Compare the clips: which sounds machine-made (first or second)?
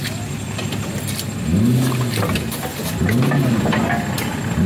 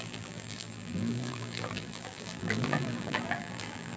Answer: second